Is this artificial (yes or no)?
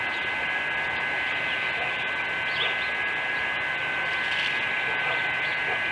no